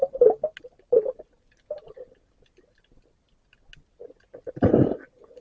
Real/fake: real